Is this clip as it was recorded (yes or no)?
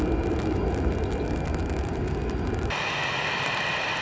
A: yes